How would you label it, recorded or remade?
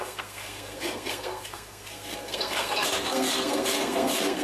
remade